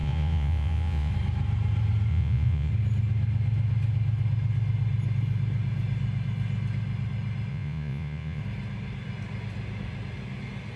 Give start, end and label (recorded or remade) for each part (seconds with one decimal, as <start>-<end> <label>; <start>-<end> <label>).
0.0-1.1 remade; 1.1-2.1 recorded; 2.1-2.7 remade; 2.7-7.5 recorded; 7.5-8.4 remade; 8.4-10.8 recorded